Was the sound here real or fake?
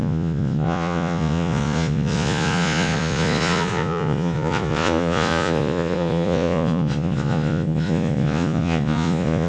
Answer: fake